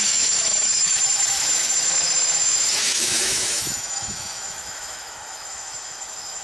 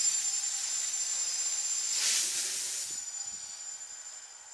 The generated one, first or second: first